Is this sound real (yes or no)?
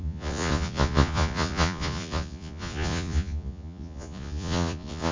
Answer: no